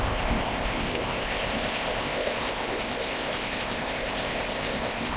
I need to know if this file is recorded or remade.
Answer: remade